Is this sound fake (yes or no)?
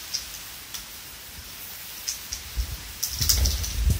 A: no